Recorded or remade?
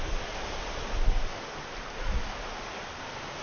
recorded